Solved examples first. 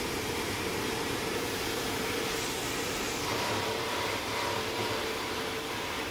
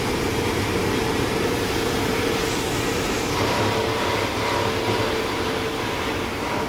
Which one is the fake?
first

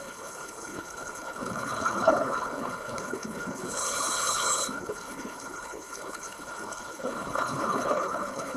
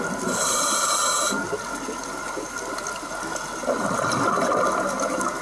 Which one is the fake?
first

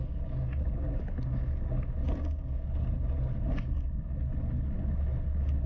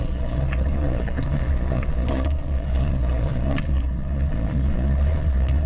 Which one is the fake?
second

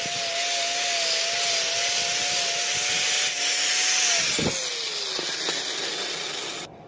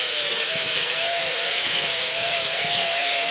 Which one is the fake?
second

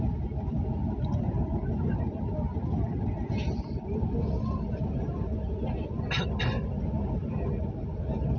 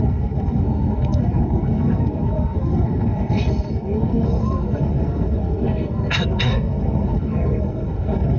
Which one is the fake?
second